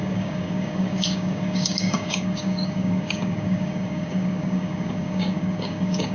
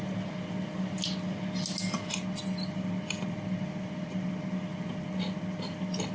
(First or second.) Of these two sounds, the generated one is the first